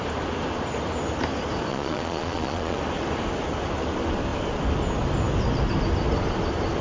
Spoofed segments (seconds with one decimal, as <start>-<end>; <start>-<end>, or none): 1.7-2.8